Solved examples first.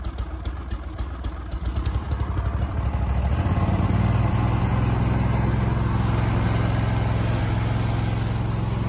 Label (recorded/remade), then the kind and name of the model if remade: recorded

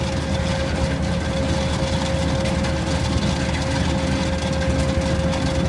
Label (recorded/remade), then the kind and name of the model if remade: recorded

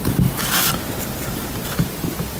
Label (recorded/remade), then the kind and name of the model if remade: recorded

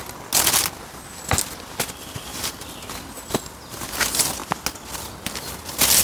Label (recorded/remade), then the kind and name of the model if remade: recorded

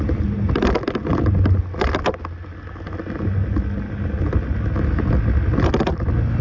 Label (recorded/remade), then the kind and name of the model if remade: recorded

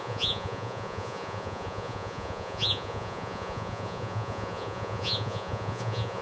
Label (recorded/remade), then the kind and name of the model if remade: remade, vocoder, Vocos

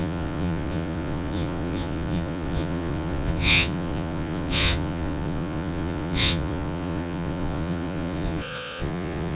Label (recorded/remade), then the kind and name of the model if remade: remade, vocoder, Vocos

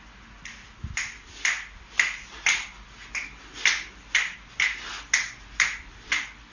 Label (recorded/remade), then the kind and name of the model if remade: recorded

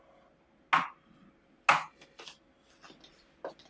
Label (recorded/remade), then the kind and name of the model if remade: recorded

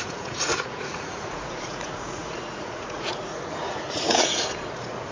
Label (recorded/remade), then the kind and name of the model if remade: remade, vocoder, Vocos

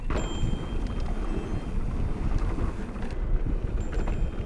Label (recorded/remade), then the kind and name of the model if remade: recorded